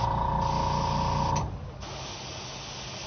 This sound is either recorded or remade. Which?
recorded